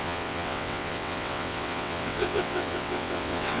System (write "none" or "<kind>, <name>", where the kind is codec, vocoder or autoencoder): vocoder, WaveNeXt